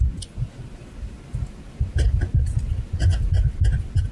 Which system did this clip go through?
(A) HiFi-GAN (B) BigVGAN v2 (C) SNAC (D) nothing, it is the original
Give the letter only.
D